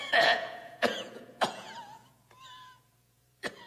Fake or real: fake